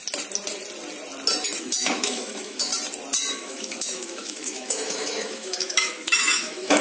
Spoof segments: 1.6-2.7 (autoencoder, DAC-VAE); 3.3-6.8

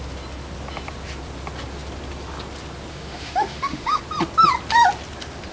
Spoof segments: 2.9-4.0 (autoencoder, DAC-VAE)